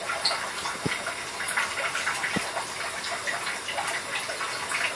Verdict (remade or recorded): recorded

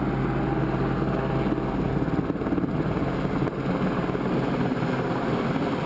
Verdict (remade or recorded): recorded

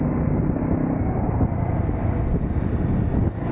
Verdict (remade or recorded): recorded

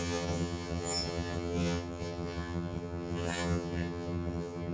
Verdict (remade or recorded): remade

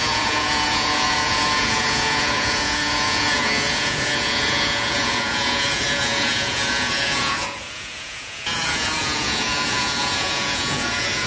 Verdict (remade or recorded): remade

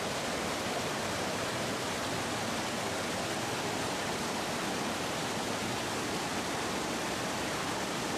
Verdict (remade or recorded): recorded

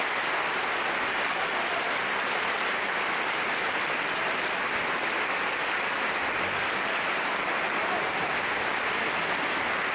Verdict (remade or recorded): recorded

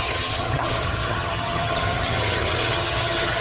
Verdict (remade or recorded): remade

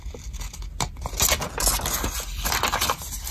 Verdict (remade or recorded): recorded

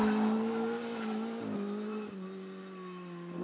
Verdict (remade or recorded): recorded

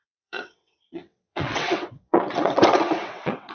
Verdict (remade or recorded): remade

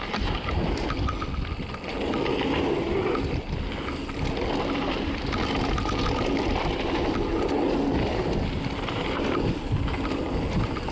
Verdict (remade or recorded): recorded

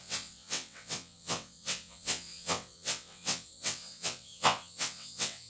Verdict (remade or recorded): remade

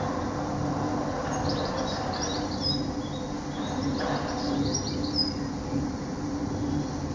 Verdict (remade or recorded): recorded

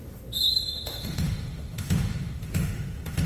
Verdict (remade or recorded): remade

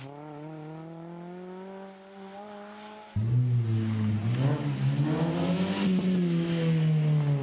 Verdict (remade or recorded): recorded